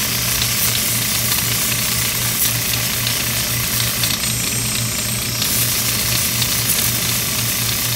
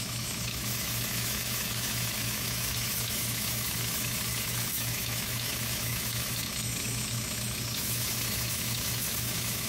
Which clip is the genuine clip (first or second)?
first